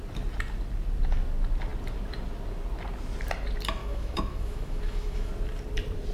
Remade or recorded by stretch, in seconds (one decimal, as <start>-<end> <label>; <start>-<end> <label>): 0.0-3.8 recorded; 3.8-5.3 remade; 5.3-6.1 recorded